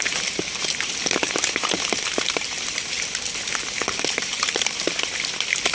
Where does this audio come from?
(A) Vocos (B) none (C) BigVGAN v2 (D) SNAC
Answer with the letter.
C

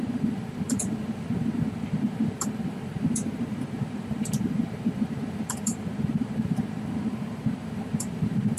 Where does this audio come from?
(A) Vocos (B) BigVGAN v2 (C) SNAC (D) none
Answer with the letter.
B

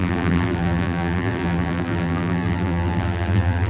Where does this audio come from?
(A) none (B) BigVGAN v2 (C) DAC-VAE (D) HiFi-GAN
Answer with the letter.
B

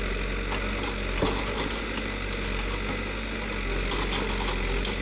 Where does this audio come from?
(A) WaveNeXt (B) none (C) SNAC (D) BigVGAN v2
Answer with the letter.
B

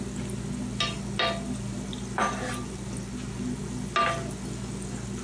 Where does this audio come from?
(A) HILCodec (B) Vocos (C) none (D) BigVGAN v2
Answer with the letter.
C